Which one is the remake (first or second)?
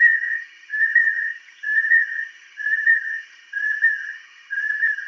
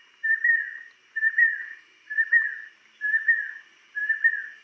first